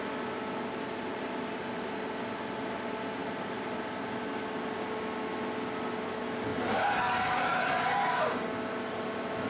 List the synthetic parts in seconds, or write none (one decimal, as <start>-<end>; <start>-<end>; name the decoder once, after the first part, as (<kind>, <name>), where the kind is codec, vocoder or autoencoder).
none